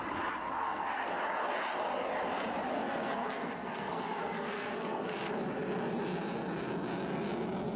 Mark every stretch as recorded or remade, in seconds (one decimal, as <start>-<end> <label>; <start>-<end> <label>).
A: 0.0-0.6 recorded; 0.6-1.2 remade; 1.2-2.7 recorded; 2.7-5.3 remade; 5.3-7.8 recorded